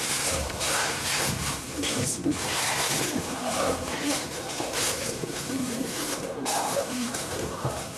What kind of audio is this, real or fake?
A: fake